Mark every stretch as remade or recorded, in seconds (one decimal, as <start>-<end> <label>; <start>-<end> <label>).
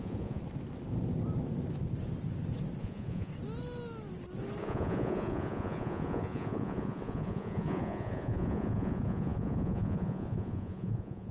0.0-0.4 remade; 0.4-2.8 recorded; 2.8-3.3 remade; 3.3-4.6 recorded; 4.6-11.3 remade